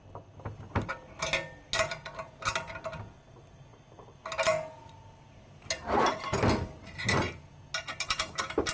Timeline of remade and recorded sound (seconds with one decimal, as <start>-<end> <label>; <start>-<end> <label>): 0.0-8.7 recorded